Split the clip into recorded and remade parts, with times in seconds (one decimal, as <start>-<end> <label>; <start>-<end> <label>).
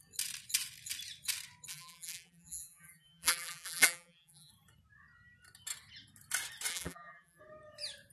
0.0-1.7 recorded; 1.7-4.5 remade; 4.5-6.7 recorded; 6.7-7.4 remade; 7.4-8.1 recorded